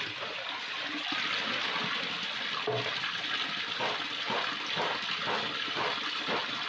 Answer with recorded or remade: recorded